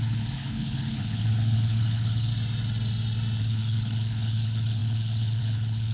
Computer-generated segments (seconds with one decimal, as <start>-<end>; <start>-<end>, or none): 0.0-2.3; 3.4-5.9